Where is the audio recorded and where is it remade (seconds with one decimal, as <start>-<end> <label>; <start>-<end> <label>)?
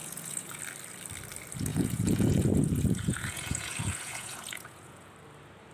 0.0-0.6 remade; 0.6-1.7 recorded; 1.7-5.1 remade; 5.1-5.7 recorded